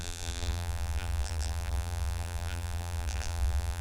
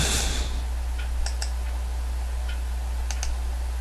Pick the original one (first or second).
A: second